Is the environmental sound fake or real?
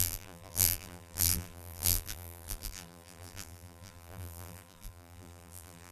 fake